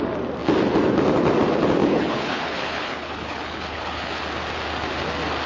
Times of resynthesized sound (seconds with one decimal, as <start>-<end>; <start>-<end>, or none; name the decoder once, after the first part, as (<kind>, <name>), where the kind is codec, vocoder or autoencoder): 1.8-4.2 (codec, HILCodec)